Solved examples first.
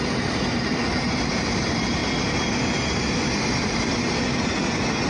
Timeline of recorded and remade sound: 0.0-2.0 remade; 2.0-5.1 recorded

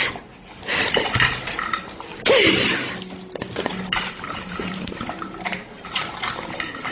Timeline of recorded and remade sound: 0.0-4.1 recorded; 4.1-6.9 remade

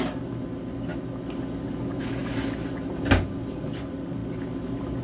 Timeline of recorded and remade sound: 0.0-5.0 recorded

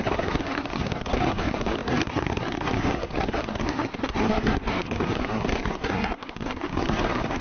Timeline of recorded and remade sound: 0.0-7.4 remade

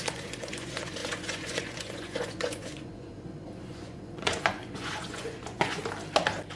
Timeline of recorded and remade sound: 0.0-5.8 remade; 5.8-6.6 recorded